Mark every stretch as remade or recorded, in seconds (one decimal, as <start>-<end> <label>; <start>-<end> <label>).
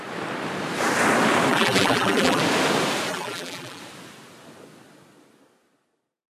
0.0-1.5 recorded; 1.5-2.4 remade; 2.4-3.1 recorded; 3.1-3.8 remade; 3.8-6.3 recorded